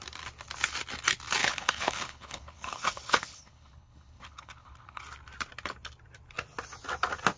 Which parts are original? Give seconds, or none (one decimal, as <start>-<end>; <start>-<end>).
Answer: 0.0-1.4; 5.0-7.4